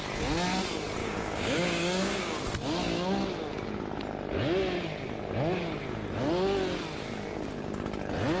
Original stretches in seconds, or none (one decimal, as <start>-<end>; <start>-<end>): 0.0-1.0; 2.4-8.4